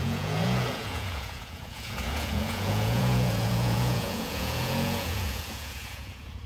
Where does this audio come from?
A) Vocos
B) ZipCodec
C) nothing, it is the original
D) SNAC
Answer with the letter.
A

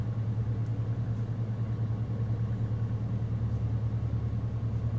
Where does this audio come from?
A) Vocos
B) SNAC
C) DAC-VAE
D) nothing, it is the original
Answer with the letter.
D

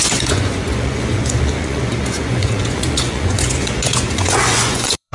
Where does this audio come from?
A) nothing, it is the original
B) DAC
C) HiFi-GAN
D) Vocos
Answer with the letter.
D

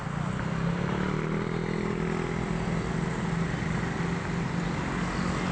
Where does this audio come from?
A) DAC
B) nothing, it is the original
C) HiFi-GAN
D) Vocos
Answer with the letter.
B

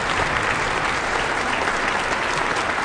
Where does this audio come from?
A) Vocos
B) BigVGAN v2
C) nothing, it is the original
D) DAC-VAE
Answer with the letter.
B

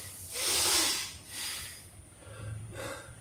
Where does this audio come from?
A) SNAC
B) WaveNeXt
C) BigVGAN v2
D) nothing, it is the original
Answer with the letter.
D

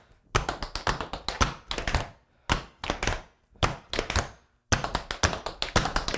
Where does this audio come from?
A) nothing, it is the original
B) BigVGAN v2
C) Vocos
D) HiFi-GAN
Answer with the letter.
A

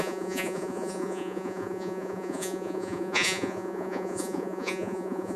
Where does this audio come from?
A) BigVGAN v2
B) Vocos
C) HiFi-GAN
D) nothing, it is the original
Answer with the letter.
B